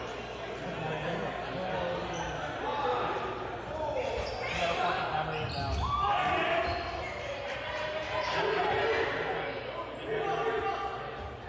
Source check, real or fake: real